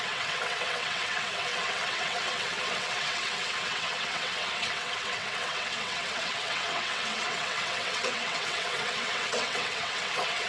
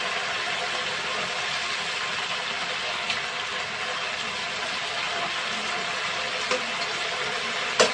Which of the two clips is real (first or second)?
second